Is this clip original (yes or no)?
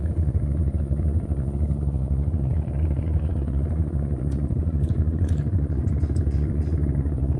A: no